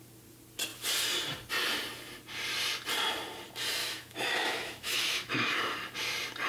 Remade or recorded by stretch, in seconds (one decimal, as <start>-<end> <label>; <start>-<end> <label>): 0.0-3.8 recorded; 3.8-5.6 remade; 5.6-6.5 recorded